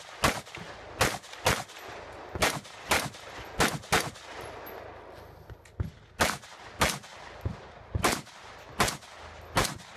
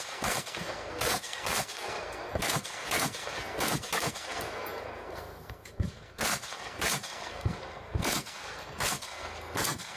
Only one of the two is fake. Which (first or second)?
second